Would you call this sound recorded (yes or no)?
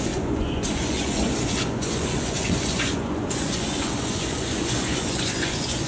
no